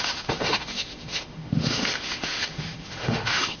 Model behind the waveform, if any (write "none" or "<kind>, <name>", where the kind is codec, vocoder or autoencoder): autoencoder, DAC-VAE